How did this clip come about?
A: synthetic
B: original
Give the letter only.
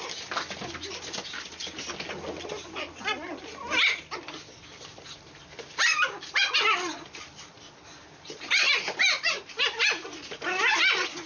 B